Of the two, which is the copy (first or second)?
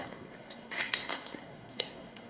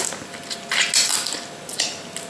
first